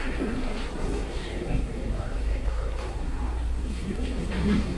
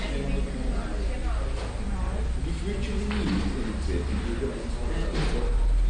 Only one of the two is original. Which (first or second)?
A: second